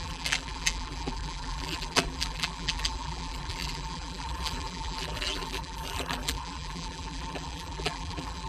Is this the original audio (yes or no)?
no